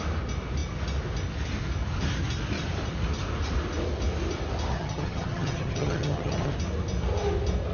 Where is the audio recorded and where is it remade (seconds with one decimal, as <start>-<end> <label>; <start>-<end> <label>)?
0.0-4.7 recorded; 4.7-6.5 remade; 6.5-7.7 recorded